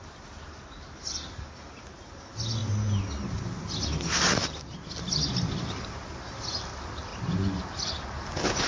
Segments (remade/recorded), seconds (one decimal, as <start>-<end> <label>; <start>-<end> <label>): 0.0-8.7 recorded